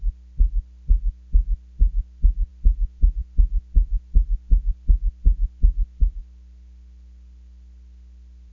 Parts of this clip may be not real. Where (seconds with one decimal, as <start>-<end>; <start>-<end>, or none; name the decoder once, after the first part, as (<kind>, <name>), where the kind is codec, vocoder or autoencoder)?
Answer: none